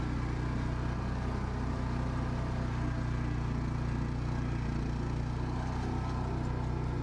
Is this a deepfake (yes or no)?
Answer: no